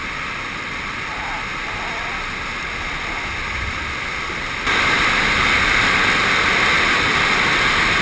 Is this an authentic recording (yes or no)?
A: yes